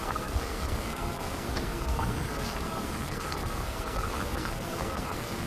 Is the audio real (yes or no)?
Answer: no